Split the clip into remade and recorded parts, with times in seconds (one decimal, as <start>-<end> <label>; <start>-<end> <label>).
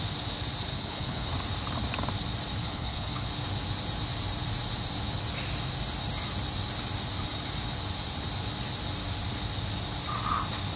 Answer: 0.0-0.7 recorded; 0.7-1.3 remade; 1.3-2.6 recorded; 2.6-3.3 remade; 3.3-10.8 recorded